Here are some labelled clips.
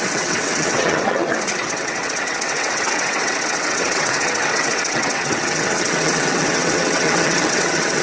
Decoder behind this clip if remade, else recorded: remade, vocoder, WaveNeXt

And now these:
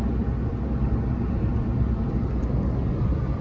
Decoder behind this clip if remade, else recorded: recorded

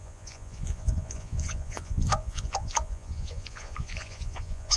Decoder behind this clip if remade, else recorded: remade, vocoder, Vocos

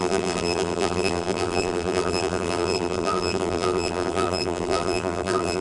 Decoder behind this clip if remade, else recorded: remade, vocoder, BigVGAN v2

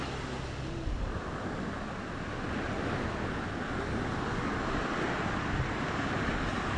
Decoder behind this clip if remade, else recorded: recorded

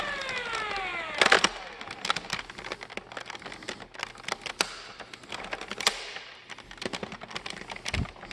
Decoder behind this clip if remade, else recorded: recorded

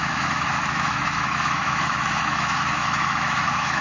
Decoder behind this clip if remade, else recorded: remade, autoencoder, DAC-VAE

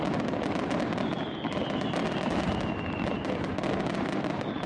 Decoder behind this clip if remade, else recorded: recorded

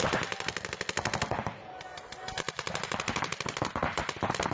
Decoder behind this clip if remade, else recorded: recorded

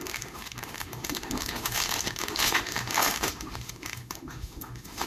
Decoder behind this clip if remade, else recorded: remade, autoencoder, DAC-VAE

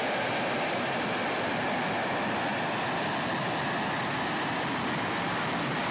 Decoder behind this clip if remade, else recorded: recorded